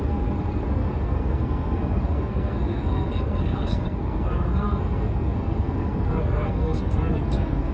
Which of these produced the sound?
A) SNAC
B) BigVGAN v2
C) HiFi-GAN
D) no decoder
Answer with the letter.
A